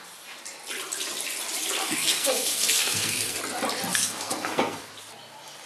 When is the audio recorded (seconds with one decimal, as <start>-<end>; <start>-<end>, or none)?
0.0-1.8; 3.4-3.9; 4.9-5.7